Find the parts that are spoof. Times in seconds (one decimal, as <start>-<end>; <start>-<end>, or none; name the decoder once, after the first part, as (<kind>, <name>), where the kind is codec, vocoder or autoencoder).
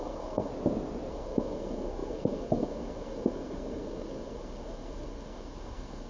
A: 0.0-0.5 (codec, SNAC); 1.1-6.1